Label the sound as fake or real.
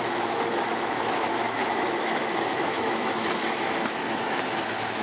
fake